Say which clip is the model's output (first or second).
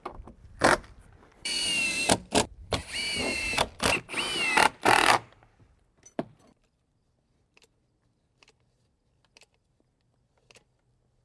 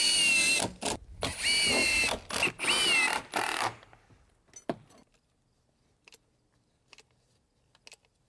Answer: first